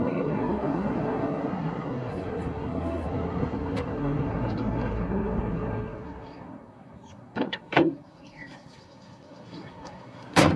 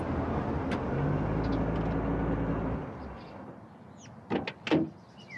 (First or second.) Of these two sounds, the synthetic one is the first